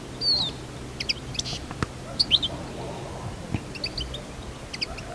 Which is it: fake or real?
real